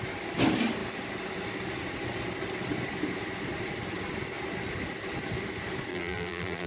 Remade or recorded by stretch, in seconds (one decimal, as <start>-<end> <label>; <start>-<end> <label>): 0.0-5.9 recorded; 5.9-6.7 remade